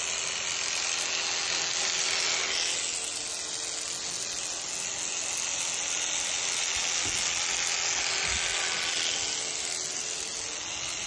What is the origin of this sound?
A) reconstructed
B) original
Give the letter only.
B